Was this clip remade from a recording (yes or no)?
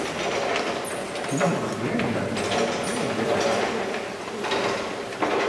no